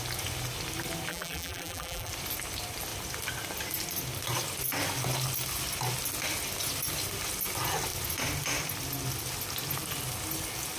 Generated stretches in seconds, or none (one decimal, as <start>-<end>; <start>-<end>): 1.1-2.1